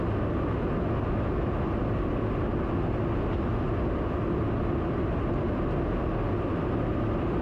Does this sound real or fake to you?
real